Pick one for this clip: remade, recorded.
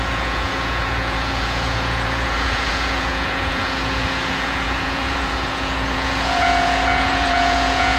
remade